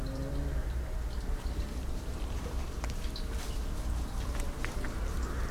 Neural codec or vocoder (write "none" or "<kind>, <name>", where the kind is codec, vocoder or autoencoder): vocoder, BigVGAN v2